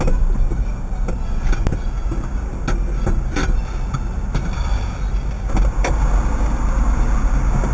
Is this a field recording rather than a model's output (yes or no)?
yes